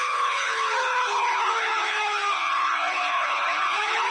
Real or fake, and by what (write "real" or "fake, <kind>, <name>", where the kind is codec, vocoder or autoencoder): fake, codec, HILCodec